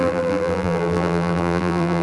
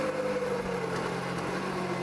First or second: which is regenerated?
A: first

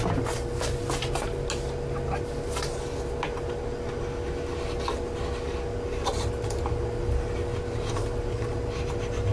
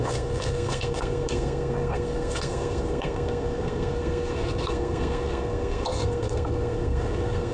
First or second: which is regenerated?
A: second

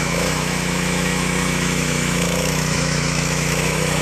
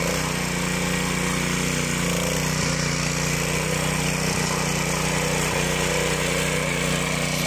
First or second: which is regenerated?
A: first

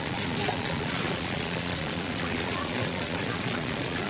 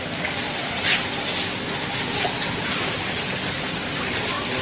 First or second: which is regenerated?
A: first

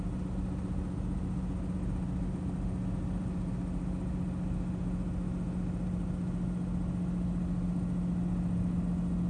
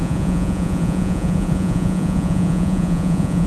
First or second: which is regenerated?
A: second